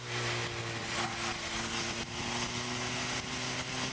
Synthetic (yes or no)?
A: no